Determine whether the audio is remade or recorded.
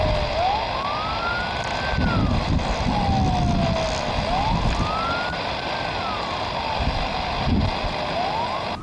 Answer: recorded